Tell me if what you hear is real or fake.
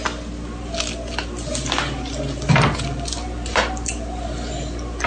real